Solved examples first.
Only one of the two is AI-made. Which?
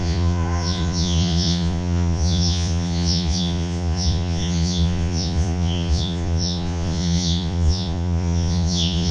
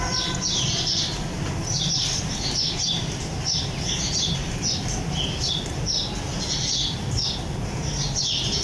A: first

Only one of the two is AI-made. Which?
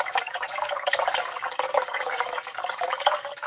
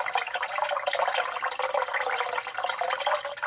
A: first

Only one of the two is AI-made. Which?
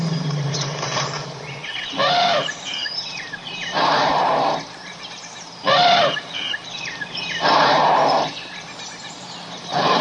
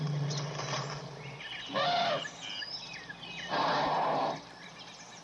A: first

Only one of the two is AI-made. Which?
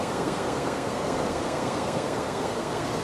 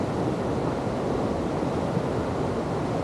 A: first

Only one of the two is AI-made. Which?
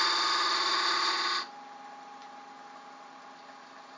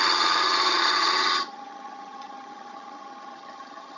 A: second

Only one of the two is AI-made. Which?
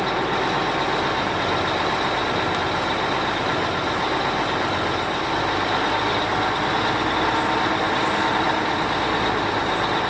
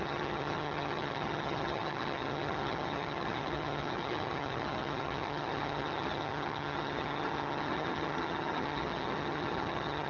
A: second